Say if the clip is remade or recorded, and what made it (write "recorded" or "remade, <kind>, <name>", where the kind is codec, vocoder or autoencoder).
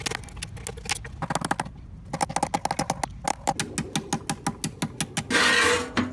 recorded